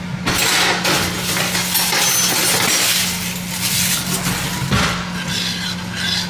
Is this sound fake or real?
real